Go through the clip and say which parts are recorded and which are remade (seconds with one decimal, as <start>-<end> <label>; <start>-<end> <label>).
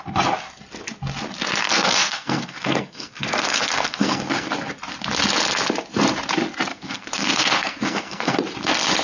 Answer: 0.0-1.6 recorded; 1.6-4.5 remade; 4.5-6.7 recorded; 6.7-8.4 remade; 8.4-9.0 recorded